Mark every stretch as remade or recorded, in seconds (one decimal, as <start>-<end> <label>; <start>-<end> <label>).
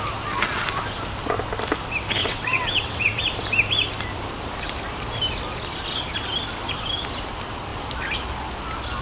0.0-2.2 recorded; 2.2-3.2 remade; 3.2-9.0 recorded